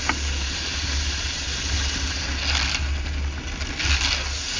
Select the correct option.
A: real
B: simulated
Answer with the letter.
A